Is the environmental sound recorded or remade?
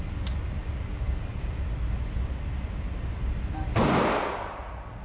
recorded